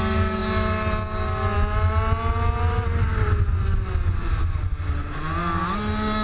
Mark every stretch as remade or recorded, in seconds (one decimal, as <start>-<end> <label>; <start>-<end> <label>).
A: 0.0-6.2 recorded